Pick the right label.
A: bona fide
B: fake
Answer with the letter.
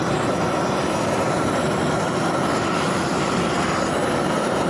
A